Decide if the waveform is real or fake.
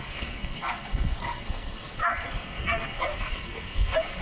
fake